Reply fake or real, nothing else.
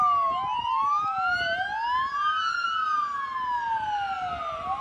real